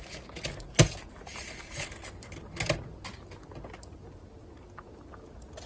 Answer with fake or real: real